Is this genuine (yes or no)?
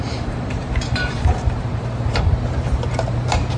no